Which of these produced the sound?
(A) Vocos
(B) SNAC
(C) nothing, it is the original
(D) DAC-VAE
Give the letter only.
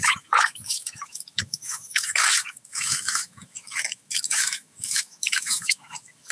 D